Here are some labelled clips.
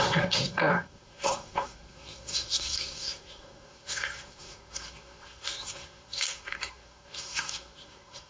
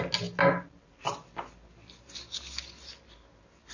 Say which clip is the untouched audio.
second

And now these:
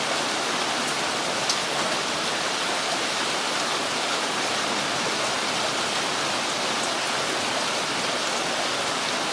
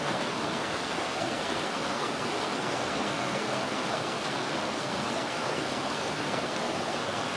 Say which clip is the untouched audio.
first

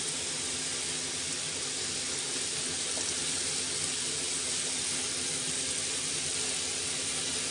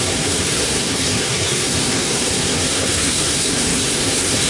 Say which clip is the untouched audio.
first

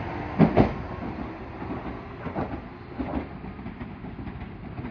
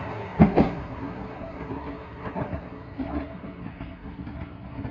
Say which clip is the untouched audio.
first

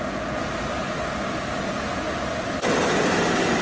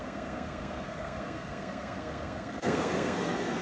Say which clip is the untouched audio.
first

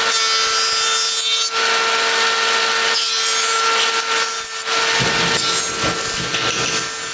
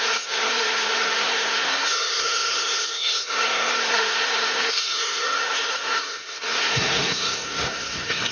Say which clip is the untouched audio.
first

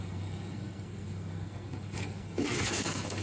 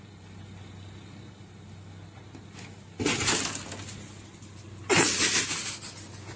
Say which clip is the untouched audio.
second